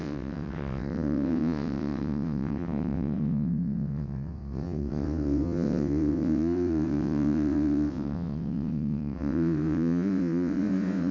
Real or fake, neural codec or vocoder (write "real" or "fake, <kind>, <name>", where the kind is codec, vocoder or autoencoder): fake, vocoder, WaveNeXt